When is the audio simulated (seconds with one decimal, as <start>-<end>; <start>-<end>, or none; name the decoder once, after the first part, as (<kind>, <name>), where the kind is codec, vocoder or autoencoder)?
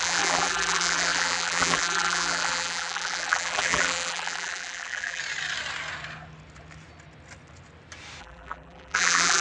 0.0-5.2 (vocoder, BigVGAN v2); 8.2-9.4